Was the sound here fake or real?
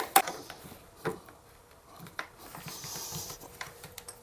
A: fake